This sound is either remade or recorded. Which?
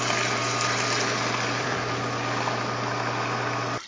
remade